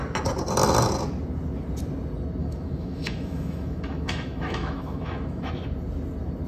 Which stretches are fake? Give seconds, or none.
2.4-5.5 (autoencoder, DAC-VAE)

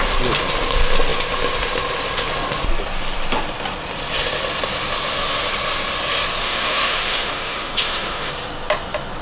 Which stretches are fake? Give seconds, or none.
6.4-8.3 (autoencoder, DAC-VAE)

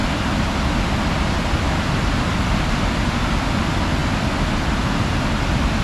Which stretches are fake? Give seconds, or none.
none

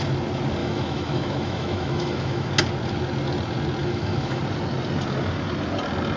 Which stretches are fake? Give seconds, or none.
0.6-2.5 (autoencoder, DAC-VAE); 3.8-4.4